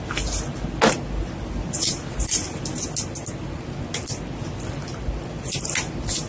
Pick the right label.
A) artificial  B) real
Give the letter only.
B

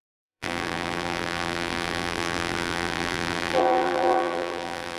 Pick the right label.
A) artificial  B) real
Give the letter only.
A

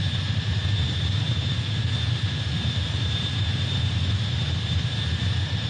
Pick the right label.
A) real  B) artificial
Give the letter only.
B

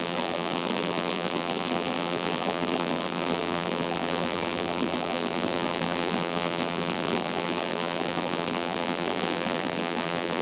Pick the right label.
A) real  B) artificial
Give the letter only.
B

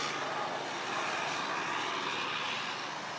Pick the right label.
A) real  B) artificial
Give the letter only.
A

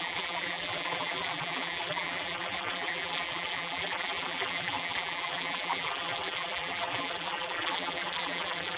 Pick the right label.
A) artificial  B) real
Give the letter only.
A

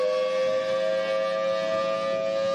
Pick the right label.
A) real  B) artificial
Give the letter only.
A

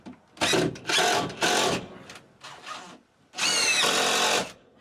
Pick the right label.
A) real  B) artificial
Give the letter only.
A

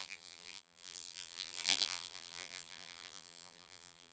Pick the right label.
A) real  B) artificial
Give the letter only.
B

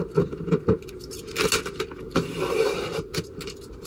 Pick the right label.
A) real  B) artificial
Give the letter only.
A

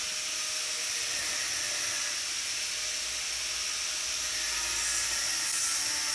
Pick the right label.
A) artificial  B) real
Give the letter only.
B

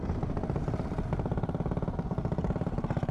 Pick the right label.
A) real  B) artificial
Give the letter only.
A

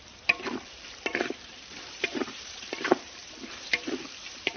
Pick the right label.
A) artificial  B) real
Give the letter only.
A